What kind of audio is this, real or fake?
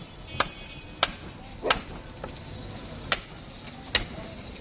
real